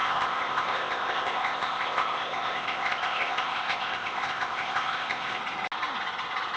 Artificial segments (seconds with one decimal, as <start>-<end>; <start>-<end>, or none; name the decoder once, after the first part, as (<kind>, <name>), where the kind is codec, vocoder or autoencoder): 0.0-5.4 (codec, ZipCodec)